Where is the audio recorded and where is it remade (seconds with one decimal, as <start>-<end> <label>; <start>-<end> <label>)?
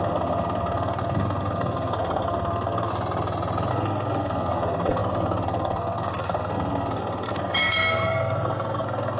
0.0-2.9 remade; 2.9-3.7 recorded; 3.7-9.2 remade